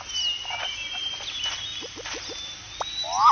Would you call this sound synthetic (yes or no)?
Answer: no